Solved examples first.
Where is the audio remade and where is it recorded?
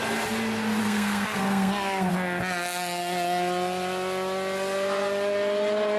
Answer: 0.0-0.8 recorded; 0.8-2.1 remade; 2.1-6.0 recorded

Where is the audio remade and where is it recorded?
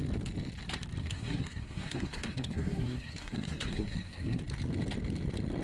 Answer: 0.0-1.0 recorded; 1.0-4.4 remade; 4.4-5.6 recorded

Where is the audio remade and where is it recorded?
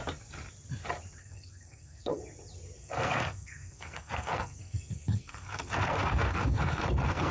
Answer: 0.0-1.2 recorded; 1.2-2.2 remade; 2.2-2.8 recorded; 2.8-7.3 remade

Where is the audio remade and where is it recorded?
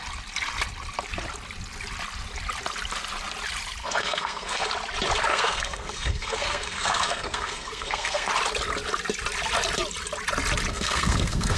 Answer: 0.0-3.8 recorded; 3.8-4.7 remade; 4.7-5.3 recorded; 5.3-8.3 remade; 8.3-10.7 recorded; 10.7-11.6 remade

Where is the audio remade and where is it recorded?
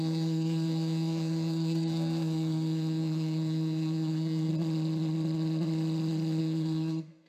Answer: 0.0-4.5 remade; 4.5-6.4 recorded; 6.4-7.3 remade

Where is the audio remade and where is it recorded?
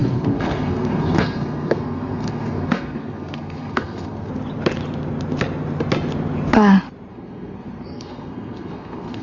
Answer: 0.0-4.3 remade; 4.3-7.1 recorded; 7.1-9.2 remade